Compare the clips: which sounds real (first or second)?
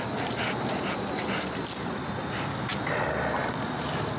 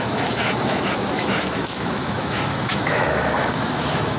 first